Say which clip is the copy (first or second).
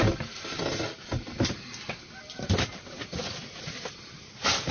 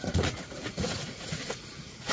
second